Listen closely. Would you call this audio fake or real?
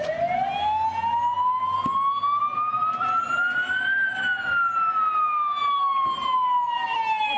real